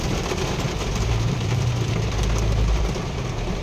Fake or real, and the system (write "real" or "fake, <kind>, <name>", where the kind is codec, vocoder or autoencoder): fake, vocoder, BigVGAN v2